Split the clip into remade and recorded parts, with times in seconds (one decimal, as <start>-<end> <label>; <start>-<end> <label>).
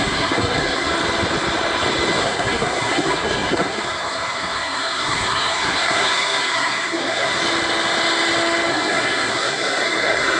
0.0-0.9 remade; 0.9-2.2 recorded; 2.2-7.4 remade; 7.4-8.7 recorded; 8.7-10.4 remade